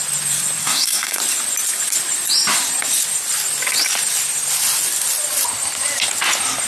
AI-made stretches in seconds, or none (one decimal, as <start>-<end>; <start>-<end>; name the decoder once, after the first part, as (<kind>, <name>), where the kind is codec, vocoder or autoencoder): 0.6-1.2 (codec, SNAC)